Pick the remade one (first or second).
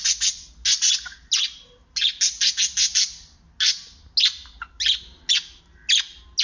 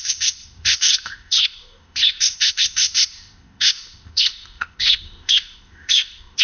second